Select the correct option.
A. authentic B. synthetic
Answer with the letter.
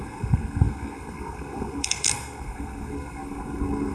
B